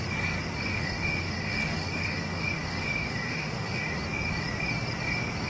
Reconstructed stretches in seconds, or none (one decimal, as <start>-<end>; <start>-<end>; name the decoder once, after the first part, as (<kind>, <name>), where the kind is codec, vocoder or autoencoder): 0.7-4.0 (autoencoder, DAC-VAE)